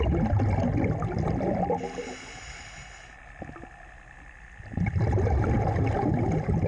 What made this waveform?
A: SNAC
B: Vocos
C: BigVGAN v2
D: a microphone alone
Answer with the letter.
D